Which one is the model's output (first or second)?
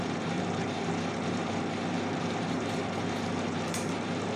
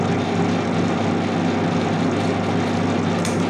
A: first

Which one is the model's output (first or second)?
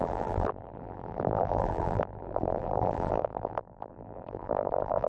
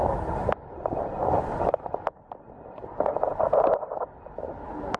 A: first